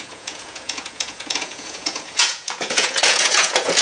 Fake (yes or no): yes